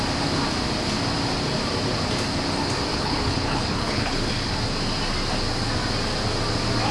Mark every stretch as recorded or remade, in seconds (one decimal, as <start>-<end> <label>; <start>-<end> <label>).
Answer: 0.0-2.9 recorded; 2.9-4.3 remade; 4.3-6.9 recorded

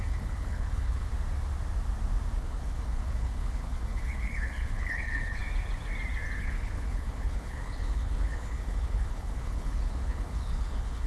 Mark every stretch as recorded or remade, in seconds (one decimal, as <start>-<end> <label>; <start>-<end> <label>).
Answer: 0.0-1.1 remade; 1.1-2.4 recorded; 2.4-5.4 remade; 5.4-6.4 recorded; 6.4-11.1 remade

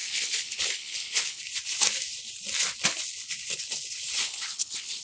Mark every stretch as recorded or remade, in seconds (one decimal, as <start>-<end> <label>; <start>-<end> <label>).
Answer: 0.0-1.4 remade; 1.4-4.2 recorded; 4.2-5.0 remade

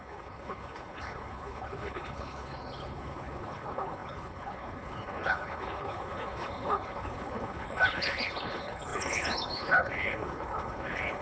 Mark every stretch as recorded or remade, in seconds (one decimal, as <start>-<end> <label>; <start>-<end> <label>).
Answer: 0.0-11.2 remade

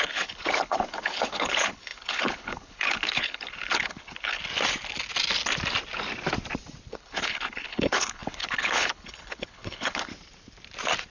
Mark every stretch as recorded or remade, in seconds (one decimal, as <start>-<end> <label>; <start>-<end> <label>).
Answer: 0.0-4.4 remade; 4.4-6.9 recorded; 6.9-10.1 remade; 10.1-11.1 recorded